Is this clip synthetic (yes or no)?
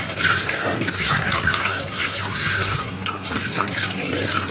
yes